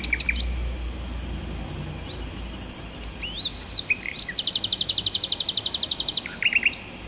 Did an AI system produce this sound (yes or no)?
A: no